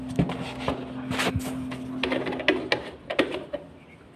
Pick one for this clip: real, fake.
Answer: real